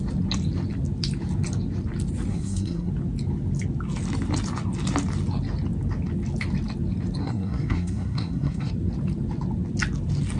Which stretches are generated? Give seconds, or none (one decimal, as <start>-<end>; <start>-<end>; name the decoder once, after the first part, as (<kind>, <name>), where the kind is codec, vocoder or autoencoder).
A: 2.3-2.9 (codec, SNAC); 7.2-8.7

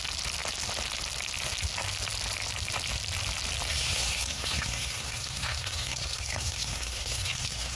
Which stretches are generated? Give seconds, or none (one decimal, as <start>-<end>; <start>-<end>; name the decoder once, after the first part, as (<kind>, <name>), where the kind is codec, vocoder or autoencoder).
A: 3.7-7.8 (codec, SNAC)